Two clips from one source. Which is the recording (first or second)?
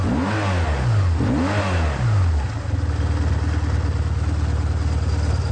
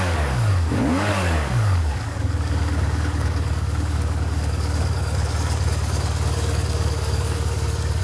first